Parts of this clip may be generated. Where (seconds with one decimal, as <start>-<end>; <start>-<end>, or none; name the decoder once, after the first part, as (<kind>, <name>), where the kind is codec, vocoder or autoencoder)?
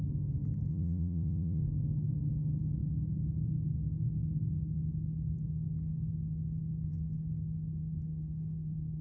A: 0.7-1.6 (vocoder, Vocos)